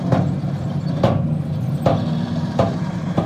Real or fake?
real